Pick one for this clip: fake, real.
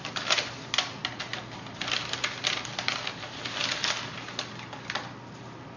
real